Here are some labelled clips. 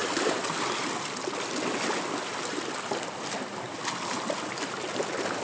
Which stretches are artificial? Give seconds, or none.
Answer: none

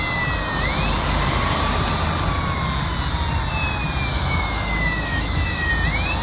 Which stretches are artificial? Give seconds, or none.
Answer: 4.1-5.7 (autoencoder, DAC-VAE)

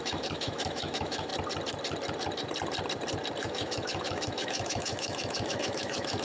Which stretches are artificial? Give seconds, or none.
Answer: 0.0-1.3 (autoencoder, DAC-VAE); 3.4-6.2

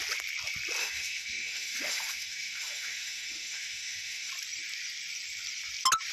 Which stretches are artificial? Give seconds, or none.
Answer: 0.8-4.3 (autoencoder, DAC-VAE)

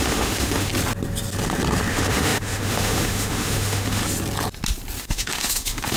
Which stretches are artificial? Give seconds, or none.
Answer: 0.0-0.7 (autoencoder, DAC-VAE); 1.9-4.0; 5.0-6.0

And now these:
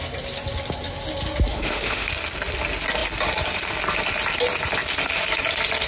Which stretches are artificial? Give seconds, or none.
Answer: 1.5-2.1 (autoencoder, DAC-VAE)

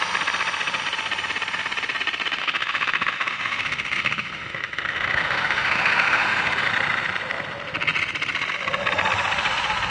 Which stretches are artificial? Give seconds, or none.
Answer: 2.4-6.7 (autoencoder, DAC-VAE)

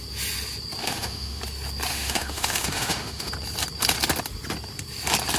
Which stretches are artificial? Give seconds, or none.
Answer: 0.8-1.4 (autoencoder, DAC-VAE); 1.9-3.3